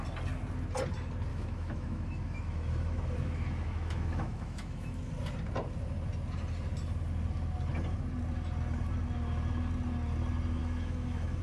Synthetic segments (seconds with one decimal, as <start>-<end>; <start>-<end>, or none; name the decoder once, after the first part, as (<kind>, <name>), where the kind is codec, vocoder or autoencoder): 1.3-5.1 (autoencoder, DAC-VAE); 10.6-11.4